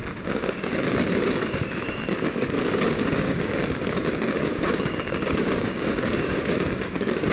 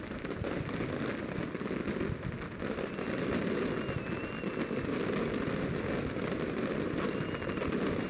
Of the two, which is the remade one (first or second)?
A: first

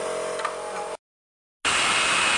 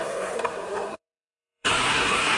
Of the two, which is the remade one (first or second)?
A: second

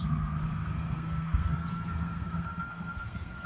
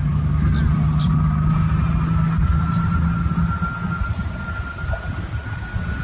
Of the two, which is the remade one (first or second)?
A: first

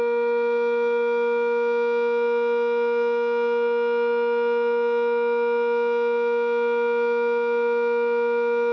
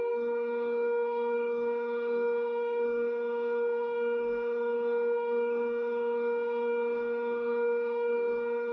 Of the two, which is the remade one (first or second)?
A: second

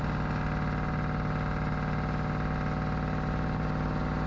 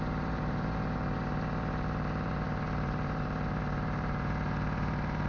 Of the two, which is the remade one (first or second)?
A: second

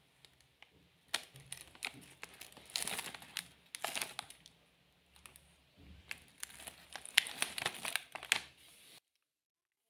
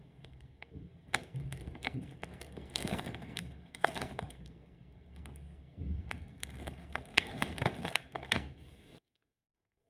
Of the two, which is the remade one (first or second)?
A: second